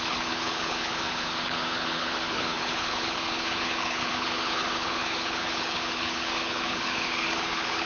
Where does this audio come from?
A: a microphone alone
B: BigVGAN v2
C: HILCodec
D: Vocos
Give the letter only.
C